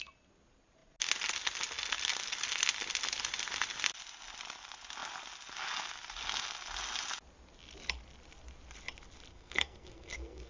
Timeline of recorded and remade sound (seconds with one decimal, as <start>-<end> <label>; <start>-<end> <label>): 0.0-9.3 recorded; 9.3-10.5 remade